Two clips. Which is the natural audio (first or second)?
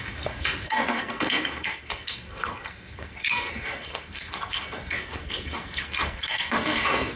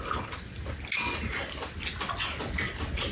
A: second